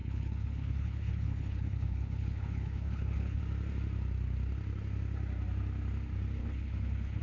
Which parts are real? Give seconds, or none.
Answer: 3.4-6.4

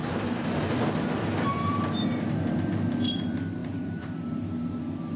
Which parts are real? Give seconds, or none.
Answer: 0.0-1.2; 2.4-3.6; 4.4-5.2